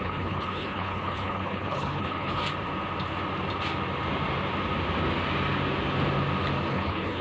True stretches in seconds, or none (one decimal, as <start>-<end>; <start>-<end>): 2.4-6.7